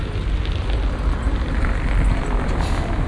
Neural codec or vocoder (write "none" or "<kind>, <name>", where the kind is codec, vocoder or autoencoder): none